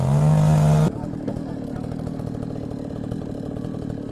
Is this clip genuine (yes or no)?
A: yes